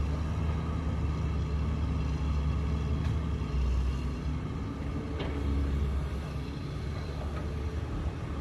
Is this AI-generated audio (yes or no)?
no